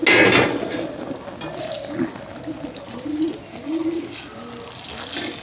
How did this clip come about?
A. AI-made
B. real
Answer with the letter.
B